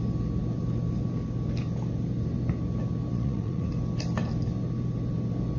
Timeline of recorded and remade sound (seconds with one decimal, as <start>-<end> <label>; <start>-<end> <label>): 0.0-3.1 recorded; 3.1-3.7 remade; 3.7-5.6 recorded